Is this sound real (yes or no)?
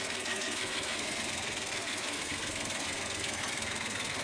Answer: no